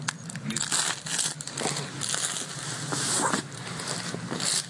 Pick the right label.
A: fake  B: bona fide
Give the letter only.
B